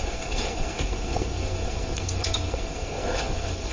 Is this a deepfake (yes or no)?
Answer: yes